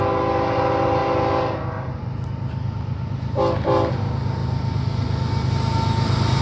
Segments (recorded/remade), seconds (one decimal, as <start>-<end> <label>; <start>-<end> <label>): 0.0-6.4 recorded